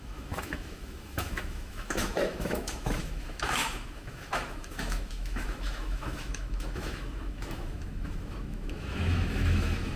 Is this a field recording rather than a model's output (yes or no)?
no